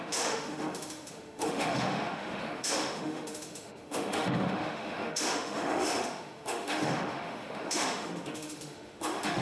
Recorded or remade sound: remade